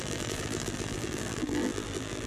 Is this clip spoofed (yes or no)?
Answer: yes